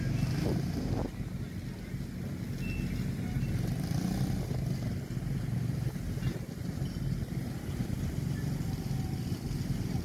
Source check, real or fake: real